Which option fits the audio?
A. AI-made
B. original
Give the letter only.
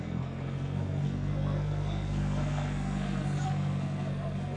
A